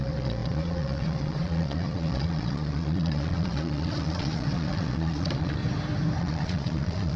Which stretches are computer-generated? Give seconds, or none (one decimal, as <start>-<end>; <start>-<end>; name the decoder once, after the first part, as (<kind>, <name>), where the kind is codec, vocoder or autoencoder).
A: 0.0-5.6 (vocoder, Vocos); 6.2-7.2